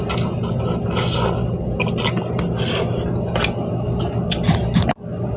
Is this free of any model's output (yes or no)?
yes